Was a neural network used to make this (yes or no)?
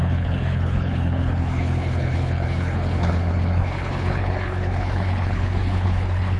yes